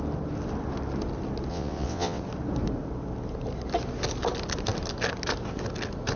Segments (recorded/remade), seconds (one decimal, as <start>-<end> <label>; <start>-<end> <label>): 0.0-1.5 recorded; 1.5-2.2 remade; 2.2-6.2 recorded